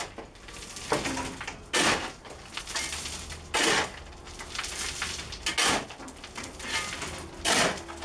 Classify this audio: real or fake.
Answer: real